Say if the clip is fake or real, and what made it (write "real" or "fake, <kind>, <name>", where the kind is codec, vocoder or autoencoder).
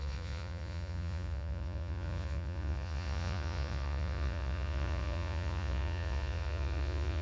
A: fake, vocoder, Vocos